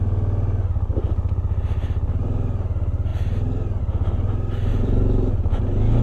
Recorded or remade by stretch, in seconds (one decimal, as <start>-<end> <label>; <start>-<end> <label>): 0.0-4.7 recorded; 4.7-5.6 remade; 5.6-6.0 recorded